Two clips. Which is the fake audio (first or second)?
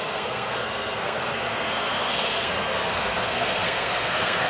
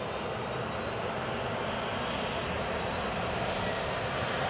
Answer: first